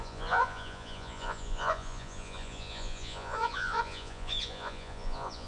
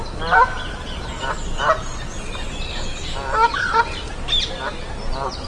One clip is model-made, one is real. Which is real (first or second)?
second